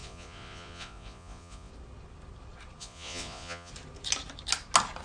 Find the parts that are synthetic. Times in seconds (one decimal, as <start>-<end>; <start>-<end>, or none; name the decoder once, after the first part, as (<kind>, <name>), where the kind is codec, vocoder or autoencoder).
0.0-1.7 (vocoder, Vocos); 2.8-3.7